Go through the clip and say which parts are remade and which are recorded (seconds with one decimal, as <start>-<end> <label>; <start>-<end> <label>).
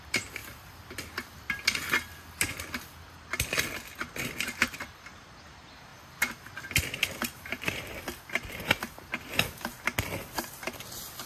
0.0-11.3 recorded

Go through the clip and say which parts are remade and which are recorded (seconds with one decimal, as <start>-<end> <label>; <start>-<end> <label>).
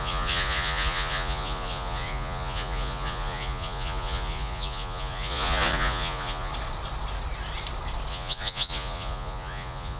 0.0-6.5 remade; 6.5-8.1 recorded; 8.1-10.0 remade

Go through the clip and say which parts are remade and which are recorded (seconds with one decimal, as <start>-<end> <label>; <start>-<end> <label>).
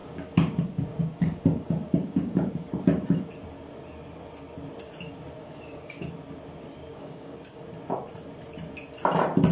0.0-2.7 remade; 2.7-5.4 recorded; 5.4-6.0 remade; 6.0-6.9 recorded; 6.9-7.6 remade; 7.6-9.5 recorded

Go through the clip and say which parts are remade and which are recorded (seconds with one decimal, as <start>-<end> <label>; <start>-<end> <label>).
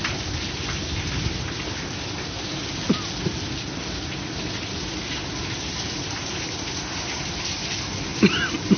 0.0-8.8 recorded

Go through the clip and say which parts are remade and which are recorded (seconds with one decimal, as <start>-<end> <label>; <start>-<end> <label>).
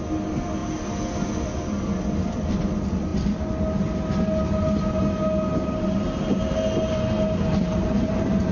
0.0-8.5 recorded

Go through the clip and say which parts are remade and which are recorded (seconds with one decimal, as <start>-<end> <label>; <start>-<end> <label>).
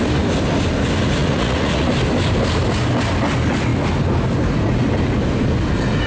0.0-1.2 recorded; 1.2-1.9 remade; 1.9-6.1 recorded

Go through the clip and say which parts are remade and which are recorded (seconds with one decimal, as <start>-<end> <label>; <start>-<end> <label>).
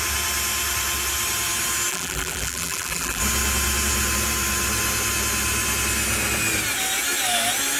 0.0-1.9 recorded; 1.9-3.2 remade; 3.2-7.8 recorded